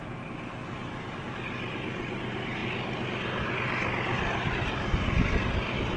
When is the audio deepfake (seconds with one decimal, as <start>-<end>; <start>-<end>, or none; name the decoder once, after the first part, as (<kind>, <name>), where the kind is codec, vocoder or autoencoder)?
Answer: none